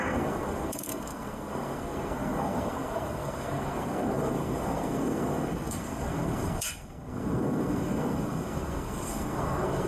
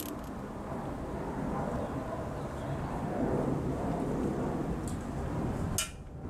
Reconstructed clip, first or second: first